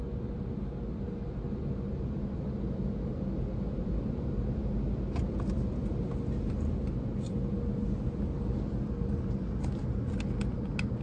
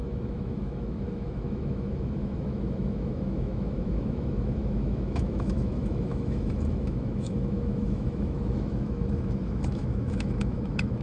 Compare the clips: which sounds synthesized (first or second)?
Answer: second